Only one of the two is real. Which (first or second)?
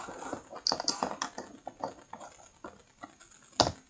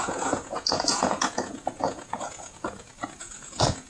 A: first